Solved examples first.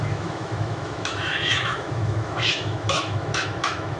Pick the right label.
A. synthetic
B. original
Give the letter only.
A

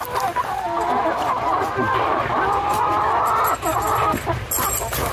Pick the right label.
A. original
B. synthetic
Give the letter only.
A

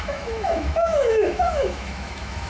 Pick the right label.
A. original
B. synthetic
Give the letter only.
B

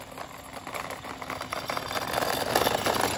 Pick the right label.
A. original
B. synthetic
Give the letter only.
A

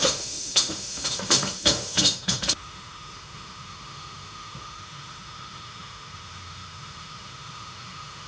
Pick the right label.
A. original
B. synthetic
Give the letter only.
B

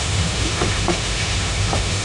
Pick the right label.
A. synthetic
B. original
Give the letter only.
A